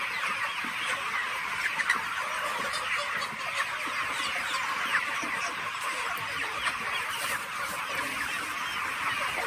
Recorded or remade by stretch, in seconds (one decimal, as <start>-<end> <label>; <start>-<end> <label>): 0.0-1.2 recorded; 1.2-1.8 remade; 1.8-4.9 recorded; 4.9-7.8 remade; 7.8-9.5 recorded